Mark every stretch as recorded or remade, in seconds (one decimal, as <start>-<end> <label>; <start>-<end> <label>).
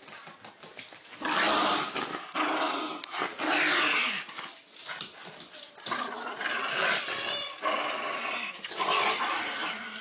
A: 0.0-10.0 recorded